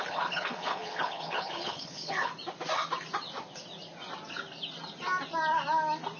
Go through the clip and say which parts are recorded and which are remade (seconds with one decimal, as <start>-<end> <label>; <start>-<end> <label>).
0.0-2.3 remade; 2.3-6.2 recorded